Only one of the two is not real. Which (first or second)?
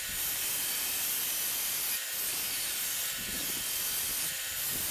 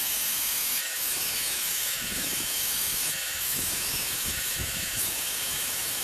second